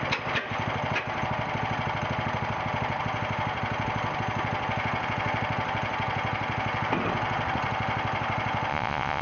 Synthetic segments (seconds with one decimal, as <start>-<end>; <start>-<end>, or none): 8.7-9.2